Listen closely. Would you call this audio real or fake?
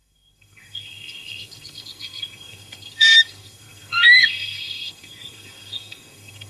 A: fake